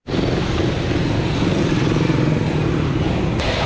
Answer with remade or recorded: recorded